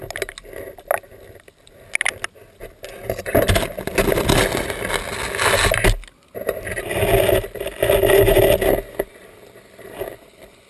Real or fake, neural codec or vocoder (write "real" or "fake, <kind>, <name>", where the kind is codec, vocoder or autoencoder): real